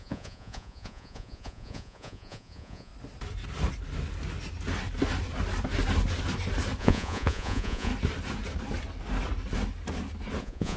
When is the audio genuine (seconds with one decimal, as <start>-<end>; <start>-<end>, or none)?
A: 2.9-6.8; 7.9-10.4